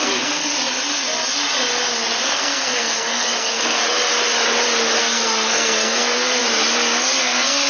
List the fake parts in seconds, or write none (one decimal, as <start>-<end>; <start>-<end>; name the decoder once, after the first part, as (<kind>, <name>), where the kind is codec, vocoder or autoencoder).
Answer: 0.0-0.5 (codec, SNAC); 2.2-3.8; 5.0-6.4; 7.2-7.7